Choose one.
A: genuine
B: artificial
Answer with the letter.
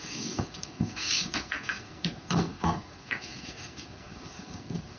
B